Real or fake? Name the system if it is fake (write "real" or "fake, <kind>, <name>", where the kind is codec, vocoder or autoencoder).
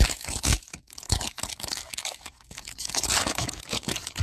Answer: fake, codec, DAC